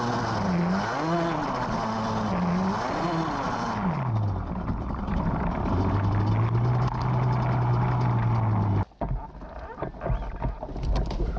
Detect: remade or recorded recorded